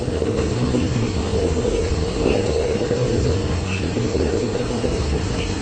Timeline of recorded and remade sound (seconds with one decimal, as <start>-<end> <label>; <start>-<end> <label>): 0.0-5.6 remade